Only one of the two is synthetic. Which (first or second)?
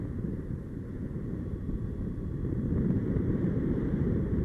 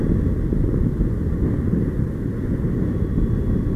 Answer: first